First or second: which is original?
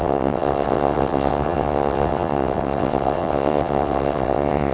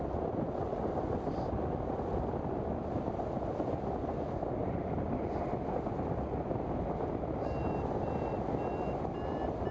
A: second